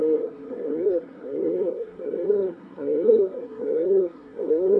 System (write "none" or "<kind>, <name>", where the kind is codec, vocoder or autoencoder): codec, SNAC